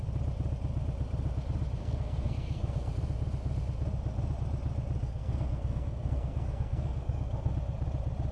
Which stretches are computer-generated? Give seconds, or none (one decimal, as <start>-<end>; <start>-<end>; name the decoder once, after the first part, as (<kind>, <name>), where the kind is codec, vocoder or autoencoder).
1.8-2.9 (codec, SNAC); 5.0-7.5

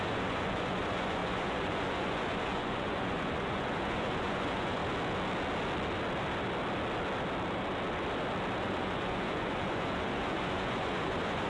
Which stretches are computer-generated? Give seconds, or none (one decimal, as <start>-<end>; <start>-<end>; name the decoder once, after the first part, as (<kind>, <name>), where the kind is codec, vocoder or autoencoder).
0.0-4.8 (vocoder, Vocos); 8.6-11.5

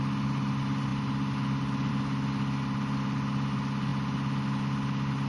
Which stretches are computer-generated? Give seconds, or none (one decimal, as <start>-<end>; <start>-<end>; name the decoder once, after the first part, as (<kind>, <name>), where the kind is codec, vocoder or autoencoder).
none

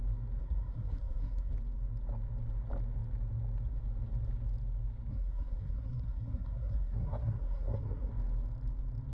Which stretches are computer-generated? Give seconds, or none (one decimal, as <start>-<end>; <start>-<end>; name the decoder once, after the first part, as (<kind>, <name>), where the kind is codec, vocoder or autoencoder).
0.4-1.5 (codec, SNAC); 5.1-8.1

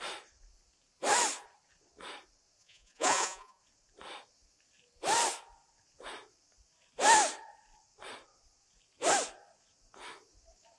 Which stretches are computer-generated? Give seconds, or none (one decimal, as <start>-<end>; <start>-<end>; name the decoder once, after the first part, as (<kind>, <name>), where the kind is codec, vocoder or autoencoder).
2.6-3.6 (vocoder, Vocos)

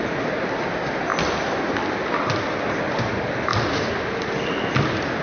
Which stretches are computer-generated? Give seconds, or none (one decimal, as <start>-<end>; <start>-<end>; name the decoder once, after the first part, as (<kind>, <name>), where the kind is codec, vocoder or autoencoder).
none